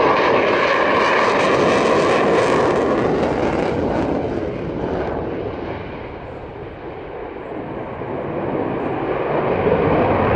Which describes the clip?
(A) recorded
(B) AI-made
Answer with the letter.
A